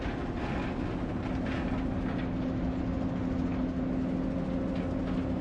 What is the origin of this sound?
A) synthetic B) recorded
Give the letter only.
B